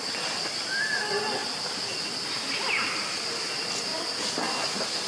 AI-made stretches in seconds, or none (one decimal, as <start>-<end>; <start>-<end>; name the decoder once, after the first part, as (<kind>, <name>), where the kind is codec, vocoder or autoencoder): none